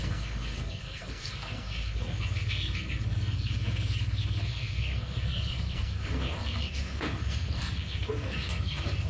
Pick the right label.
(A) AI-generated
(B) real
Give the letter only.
A